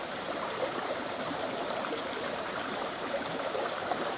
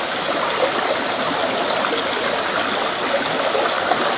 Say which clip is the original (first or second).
second